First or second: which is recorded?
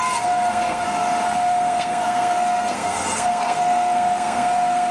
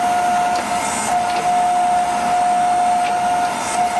second